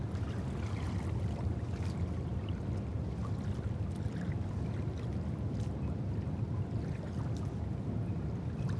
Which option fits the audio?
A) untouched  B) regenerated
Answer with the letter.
A